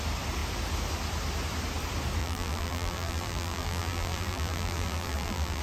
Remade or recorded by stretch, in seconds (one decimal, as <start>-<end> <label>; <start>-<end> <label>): 0.0-2.2 recorded; 2.2-5.6 remade